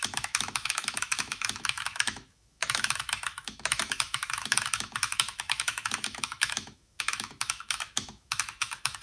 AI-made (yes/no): yes